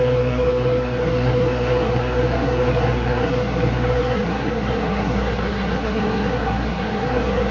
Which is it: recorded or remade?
remade